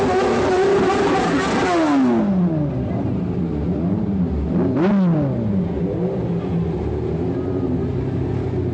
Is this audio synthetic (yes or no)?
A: no